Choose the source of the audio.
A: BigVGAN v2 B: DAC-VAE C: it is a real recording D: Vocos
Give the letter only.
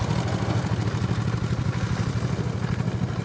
C